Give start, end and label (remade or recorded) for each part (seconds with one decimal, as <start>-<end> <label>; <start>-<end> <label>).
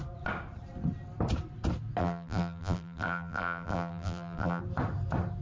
0.0-2.0 recorded; 2.0-4.6 remade; 4.6-5.4 recorded